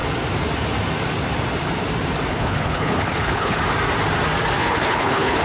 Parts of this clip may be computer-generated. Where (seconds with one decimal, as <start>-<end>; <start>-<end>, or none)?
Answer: 2.3-3.6; 4.6-5.4